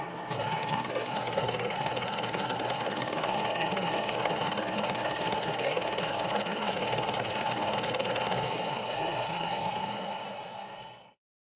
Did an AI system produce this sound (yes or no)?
yes